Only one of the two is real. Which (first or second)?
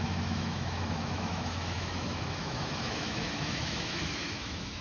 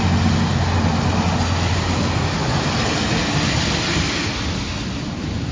second